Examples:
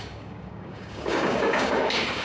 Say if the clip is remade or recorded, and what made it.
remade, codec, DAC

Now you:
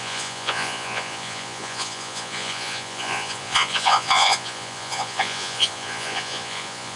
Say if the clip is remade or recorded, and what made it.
remade, vocoder, Vocos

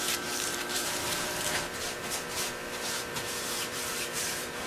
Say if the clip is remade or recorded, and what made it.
remade, vocoder, BigVGAN v2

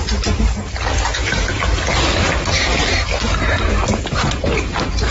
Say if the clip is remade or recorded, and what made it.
recorded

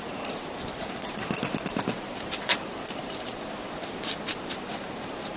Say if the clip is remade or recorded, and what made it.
remade, vocoder, BigVGAN v2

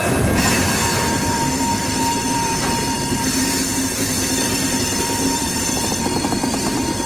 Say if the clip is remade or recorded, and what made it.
remade, vocoder, BigVGAN v2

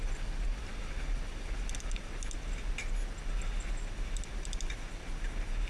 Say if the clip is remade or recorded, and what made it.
recorded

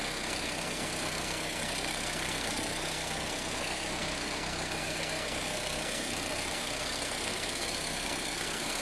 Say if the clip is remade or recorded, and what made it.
remade, codec, SNAC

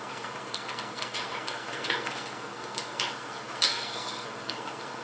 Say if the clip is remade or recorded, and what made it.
remade, codec, SNAC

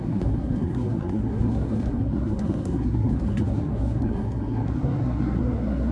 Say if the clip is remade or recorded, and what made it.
remade, codec, SNAC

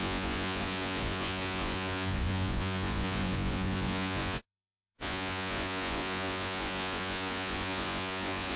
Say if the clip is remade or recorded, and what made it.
remade, vocoder, Vocos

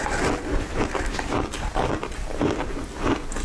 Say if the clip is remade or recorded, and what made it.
recorded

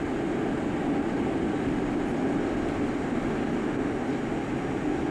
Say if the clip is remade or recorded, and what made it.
recorded